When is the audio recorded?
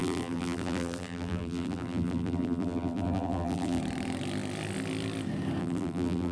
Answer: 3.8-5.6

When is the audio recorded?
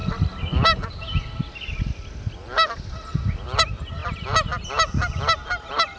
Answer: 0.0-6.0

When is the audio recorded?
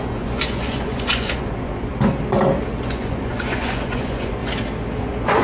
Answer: 1.9-2.8; 4.4-5.0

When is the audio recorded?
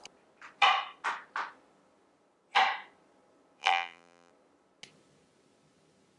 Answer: 0.0-3.6; 4.3-6.2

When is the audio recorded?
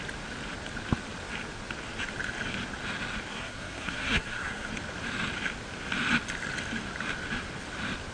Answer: 0.0-3.3; 4.7-8.1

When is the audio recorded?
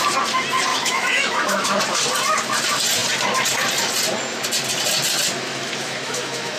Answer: 0.0-0.7; 1.8-5.5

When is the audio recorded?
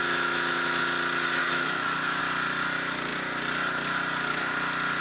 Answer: 0.8-1.4; 2.2-5.0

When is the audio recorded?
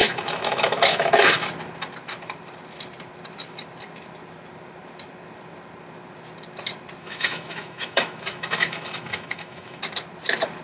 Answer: 1.5-7.0; 9.8-10.6